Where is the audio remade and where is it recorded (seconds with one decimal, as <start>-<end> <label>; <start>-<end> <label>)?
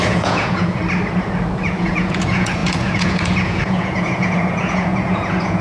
0.0-0.8 remade; 0.8-1.6 recorded; 1.6-5.6 remade